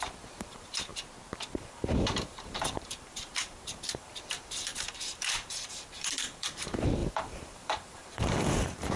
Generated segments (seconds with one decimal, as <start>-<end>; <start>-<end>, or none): 0.0-0.9; 1.5-9.0